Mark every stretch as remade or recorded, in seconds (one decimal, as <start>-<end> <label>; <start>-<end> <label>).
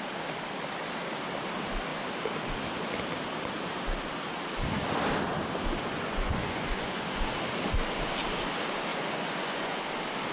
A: 0.0-5.9 recorded; 5.9-7.3 remade; 7.3-8.9 recorded; 8.9-9.8 remade; 9.8-10.3 recorded